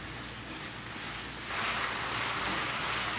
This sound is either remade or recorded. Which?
recorded